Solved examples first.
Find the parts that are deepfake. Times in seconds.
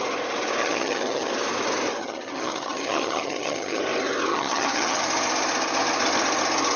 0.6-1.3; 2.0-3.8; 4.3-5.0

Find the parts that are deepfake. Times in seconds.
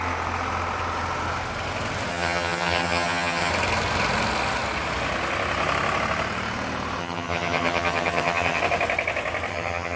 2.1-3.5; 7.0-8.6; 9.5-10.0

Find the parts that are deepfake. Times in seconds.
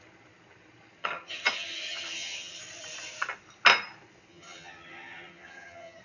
1.0-2.6; 4.3-6.0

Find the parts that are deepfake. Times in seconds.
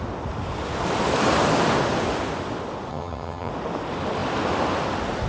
2.9-3.5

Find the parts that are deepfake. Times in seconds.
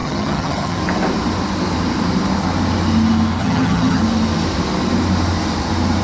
0.0-0.8; 3.4-4.0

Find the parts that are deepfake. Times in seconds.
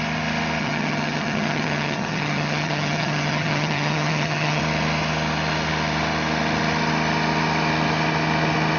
0.6-4.6